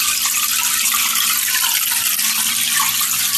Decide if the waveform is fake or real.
real